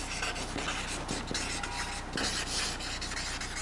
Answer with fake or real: real